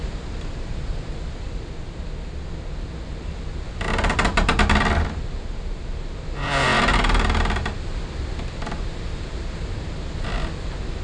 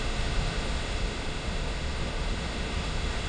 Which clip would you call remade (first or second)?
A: second